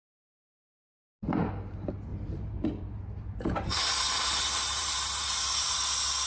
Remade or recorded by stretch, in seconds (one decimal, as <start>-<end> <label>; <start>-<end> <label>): 0.0-2.1 recorded; 2.1-5.4 remade; 5.4-6.3 recorded

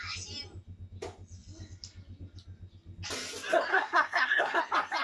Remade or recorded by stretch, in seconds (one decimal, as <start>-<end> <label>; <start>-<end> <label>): 0.0-3.7 recorded; 3.7-4.6 remade; 4.6-5.0 recorded